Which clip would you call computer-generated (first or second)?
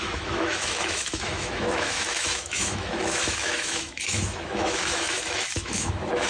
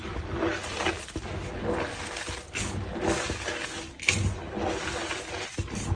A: first